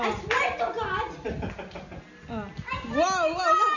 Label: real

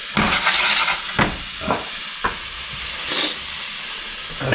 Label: real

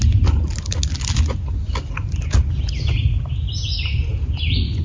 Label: real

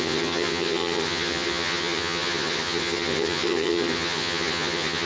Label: fake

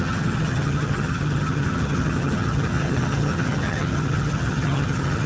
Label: fake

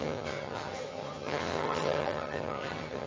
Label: fake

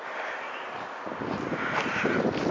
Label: real